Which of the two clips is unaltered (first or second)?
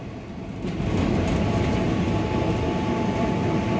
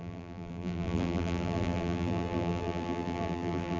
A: first